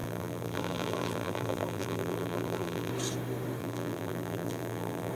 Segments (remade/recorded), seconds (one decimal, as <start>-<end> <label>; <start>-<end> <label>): 0.0-2.9 remade; 2.9-3.6 recorded; 3.6-5.1 remade